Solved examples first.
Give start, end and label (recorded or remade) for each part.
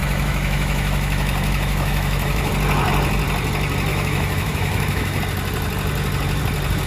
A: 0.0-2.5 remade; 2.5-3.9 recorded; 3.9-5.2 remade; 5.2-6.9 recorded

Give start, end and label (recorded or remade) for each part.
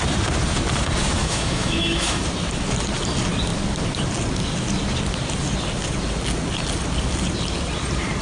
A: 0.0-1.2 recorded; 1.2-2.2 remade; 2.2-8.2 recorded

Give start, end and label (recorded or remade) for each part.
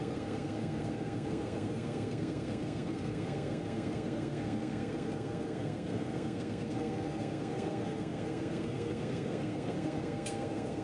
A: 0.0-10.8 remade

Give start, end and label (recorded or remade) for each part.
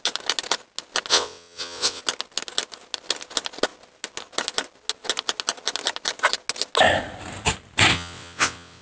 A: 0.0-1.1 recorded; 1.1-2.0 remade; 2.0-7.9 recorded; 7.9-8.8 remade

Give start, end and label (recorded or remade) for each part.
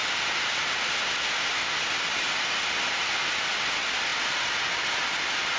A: 0.0-5.6 recorded